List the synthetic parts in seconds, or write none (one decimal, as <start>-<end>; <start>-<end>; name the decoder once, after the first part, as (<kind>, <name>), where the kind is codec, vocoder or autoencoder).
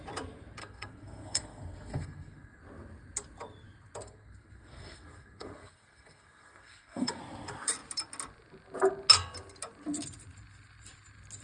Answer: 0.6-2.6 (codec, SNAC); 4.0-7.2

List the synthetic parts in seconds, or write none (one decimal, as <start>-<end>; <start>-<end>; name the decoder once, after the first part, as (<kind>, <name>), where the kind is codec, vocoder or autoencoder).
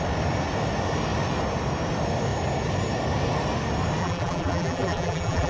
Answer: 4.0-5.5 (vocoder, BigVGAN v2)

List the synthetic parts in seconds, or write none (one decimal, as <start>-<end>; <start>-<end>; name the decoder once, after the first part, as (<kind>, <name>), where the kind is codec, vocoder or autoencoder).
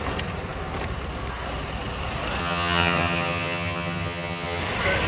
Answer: 2.4-4.6 (vocoder, HiFi-GAN)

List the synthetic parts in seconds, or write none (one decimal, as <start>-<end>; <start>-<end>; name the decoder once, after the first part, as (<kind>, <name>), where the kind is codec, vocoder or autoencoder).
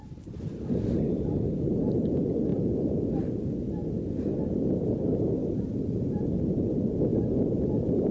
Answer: 5.4-6.4 (vocoder, BigVGAN v2); 7.1-8.1